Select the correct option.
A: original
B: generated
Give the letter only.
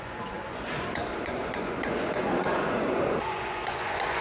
B